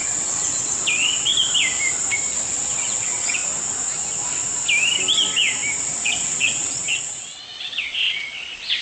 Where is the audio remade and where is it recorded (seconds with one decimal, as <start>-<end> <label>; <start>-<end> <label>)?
0.0-1.3 remade; 1.3-2.5 recorded; 2.5-3.4 remade; 3.4-5.8 recorded; 5.8-8.8 remade